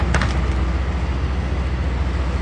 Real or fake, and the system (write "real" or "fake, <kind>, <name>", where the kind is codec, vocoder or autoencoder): real